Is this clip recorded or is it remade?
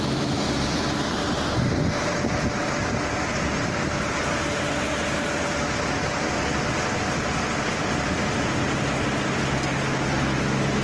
recorded